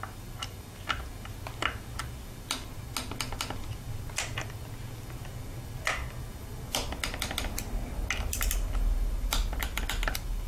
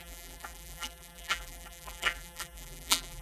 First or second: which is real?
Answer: first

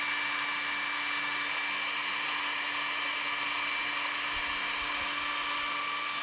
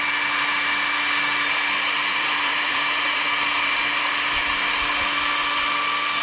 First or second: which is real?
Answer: first